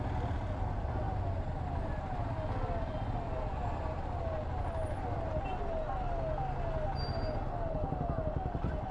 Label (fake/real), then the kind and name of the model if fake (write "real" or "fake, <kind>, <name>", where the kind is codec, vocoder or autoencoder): real